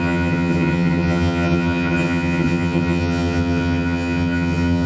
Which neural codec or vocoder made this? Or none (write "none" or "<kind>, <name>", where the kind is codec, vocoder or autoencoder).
vocoder, HiFi-GAN